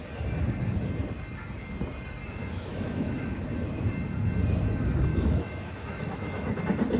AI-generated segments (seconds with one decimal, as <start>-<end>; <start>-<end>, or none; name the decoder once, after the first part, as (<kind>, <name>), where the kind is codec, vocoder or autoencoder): 2.4-3.4 (autoencoder, DAC-VAE); 5.1-6.6